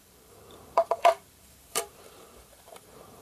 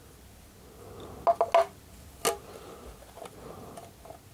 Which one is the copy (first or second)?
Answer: first